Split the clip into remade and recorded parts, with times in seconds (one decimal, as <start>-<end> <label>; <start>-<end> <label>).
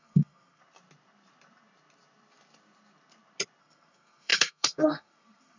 0.0-0.6 remade; 0.6-3.6 recorded; 3.6-5.6 remade